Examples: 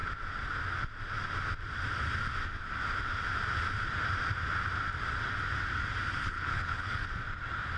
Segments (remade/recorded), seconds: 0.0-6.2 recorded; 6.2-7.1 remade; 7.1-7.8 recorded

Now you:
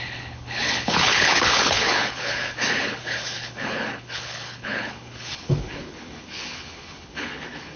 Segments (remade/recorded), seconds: 0.0-7.8 remade

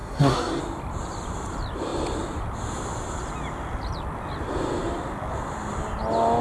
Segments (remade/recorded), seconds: 0.0-0.6 remade; 0.6-6.4 recorded

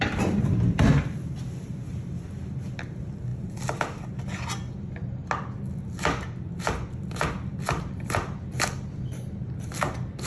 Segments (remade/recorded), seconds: 0.0-10.3 recorded

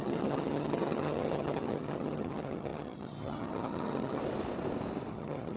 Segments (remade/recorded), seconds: 0.0-4.2 remade; 4.2-5.1 recorded; 5.1-5.6 remade

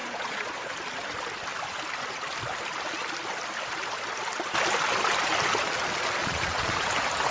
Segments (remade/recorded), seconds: 0.0-0.7 remade; 0.7-6.2 recorded; 6.2-6.8 remade; 6.8-7.3 recorded

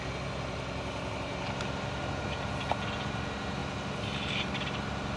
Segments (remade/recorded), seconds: 0.0-5.2 recorded